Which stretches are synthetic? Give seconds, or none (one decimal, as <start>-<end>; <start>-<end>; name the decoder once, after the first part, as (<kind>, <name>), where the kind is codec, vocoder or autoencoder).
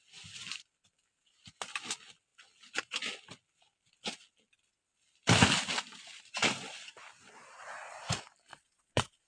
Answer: 8.5-9.3 (vocoder, Vocos)